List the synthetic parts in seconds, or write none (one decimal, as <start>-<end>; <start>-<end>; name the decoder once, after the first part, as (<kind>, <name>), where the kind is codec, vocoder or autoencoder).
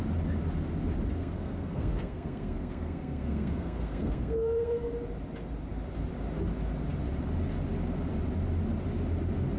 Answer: 1.2-4.9 (codec, SNAC)